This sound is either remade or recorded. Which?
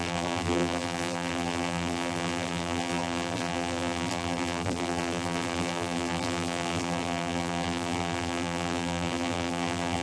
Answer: remade